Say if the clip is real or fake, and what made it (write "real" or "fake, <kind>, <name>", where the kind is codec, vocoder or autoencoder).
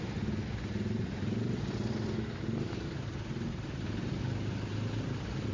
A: real